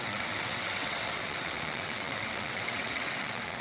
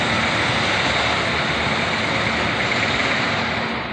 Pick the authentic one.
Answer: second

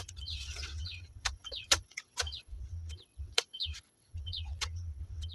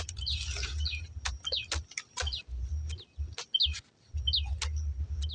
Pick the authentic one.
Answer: second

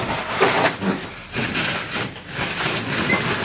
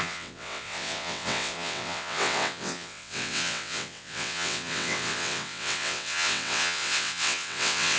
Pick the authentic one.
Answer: first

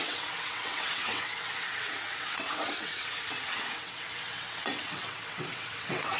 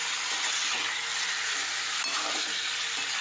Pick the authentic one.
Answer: second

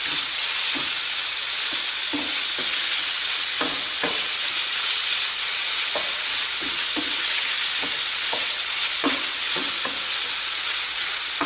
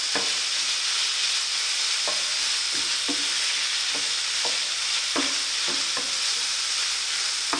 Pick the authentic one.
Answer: second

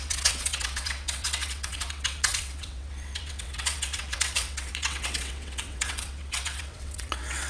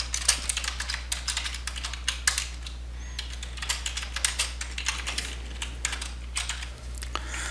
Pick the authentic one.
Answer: second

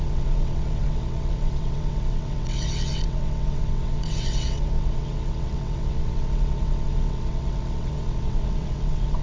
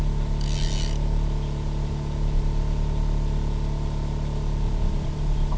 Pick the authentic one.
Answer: second